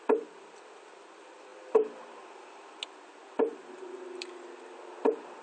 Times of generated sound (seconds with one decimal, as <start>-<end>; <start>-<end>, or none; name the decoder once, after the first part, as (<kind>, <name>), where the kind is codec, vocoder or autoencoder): none